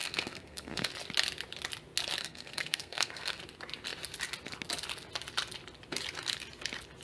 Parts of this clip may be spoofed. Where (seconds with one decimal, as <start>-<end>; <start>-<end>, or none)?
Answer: 0.0-0.9; 2.2-3.4